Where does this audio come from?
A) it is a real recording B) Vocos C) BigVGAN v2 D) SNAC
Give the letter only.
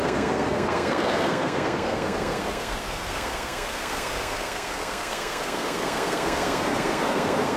D